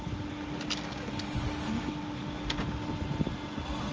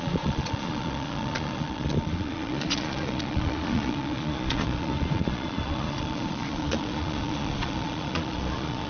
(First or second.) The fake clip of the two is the second